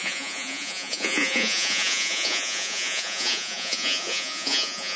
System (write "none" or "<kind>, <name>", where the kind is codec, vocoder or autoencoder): vocoder, Vocos